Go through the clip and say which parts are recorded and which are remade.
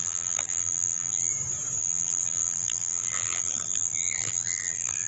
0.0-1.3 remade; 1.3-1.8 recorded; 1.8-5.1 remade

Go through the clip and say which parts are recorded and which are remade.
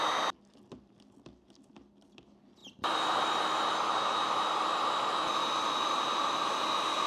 0.0-2.6 recorded; 2.6-3.4 remade; 3.4-5.4 recorded; 5.4-6.5 remade; 6.5-7.1 recorded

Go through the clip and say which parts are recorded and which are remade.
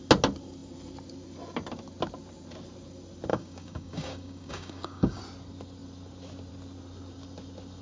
0.0-3.3 recorded; 3.3-5.2 remade; 5.2-7.8 recorded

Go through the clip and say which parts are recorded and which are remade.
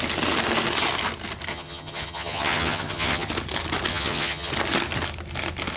0.0-1.5 recorded; 1.5-3.3 remade; 3.3-3.9 recorded; 3.9-4.5 remade; 4.5-5.8 recorded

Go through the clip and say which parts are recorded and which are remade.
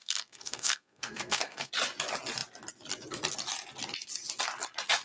0.0-1.7 remade; 1.7-5.0 recorded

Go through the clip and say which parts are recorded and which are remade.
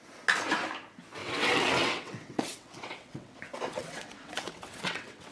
0.0-1.2 recorded; 1.2-3.4 remade; 3.4-3.8 recorded; 3.8-5.3 remade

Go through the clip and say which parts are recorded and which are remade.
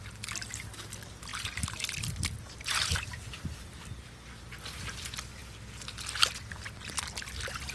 0.0-7.7 recorded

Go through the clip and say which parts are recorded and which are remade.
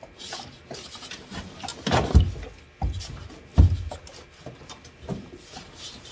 0.0-1.7 remade; 1.7-3.0 recorded; 3.0-3.5 remade; 3.5-4.2 recorded; 4.2-6.1 remade